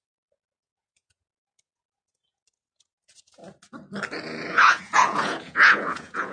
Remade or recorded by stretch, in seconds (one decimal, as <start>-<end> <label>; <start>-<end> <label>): 0.0-3.4 remade; 3.4-4.5 recorded; 4.5-6.3 remade